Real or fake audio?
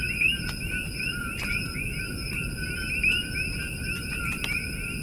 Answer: real